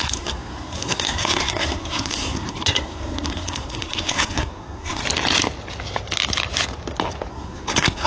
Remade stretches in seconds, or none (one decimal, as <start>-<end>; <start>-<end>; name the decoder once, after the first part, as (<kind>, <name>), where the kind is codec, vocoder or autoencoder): 0.0-5.0 (codec, SNAC); 7.3-8.1